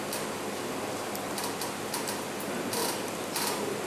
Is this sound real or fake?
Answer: real